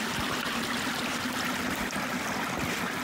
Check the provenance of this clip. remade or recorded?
recorded